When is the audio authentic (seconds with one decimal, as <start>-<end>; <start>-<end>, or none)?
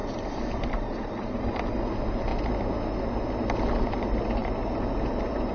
1.6-4.4